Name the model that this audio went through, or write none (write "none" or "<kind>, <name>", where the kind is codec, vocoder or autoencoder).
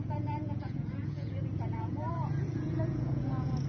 vocoder, Vocos